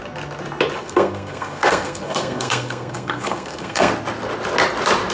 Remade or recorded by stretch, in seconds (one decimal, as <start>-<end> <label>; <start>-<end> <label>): 0.0-0.8 recorded; 0.8-3.9 remade; 3.9-5.1 recorded